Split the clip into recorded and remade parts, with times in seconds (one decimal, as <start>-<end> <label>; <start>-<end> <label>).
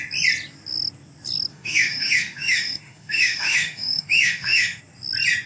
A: 0.0-1.5 recorded; 1.5-4.8 remade; 4.8-5.5 recorded